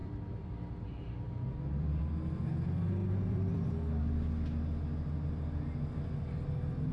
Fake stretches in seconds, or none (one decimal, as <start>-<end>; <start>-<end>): 0.0-2.0; 3.0-3.7